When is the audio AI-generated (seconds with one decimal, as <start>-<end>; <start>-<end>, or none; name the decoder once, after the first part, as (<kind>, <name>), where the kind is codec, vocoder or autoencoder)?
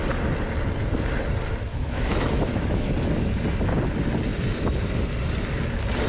1.7-2.9 (autoencoder, DAC-VAE)